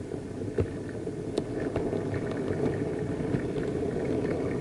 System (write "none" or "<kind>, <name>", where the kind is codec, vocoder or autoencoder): none